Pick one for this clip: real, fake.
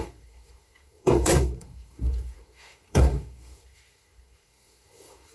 fake